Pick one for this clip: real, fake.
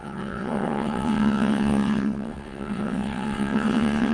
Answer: fake